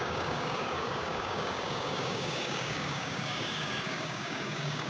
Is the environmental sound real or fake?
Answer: fake